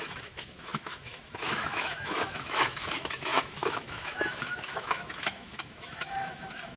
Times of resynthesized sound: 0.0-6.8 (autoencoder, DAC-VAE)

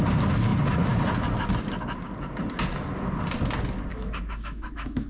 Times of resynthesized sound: 3.9-5.1 (autoencoder, DAC-VAE)

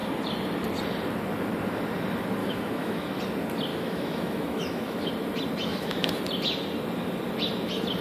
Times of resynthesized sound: 2.4-3.2 (autoencoder, DAC-VAE); 3.7-5.1; 5.7-6.2

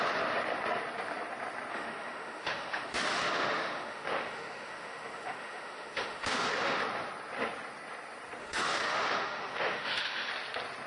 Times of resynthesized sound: 1.7-6.8 (autoencoder, DAC-VAE); 8.4-10.3

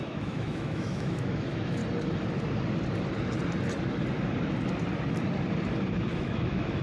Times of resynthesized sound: 0.0-1.8 (autoencoder, DAC-VAE); 5.9-6.8

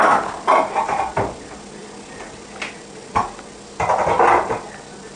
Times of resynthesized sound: none